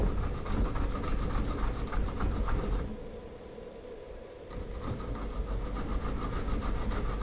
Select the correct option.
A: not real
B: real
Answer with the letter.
B